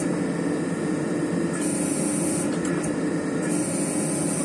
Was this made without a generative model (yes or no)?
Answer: yes